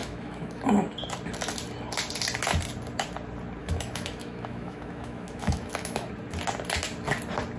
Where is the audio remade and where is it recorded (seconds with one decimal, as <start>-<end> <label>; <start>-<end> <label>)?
0.0-0.6 remade; 0.6-3.6 recorded; 3.6-6.1 remade; 6.1-7.6 recorded